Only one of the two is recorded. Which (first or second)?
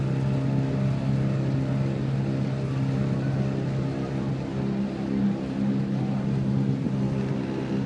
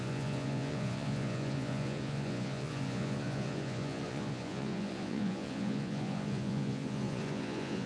first